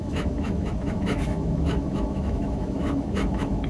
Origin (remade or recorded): remade